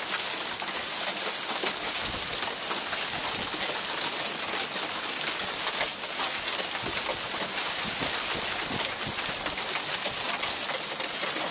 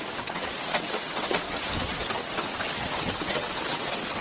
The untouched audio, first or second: first